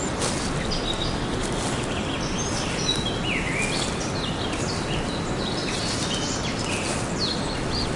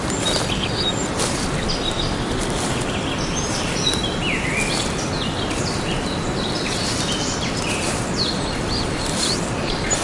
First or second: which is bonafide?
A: first